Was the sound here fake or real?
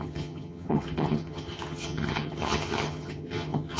fake